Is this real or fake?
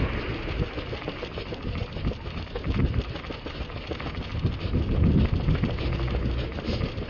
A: real